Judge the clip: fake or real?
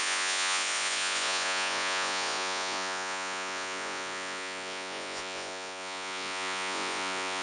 fake